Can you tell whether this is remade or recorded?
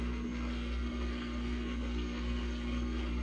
remade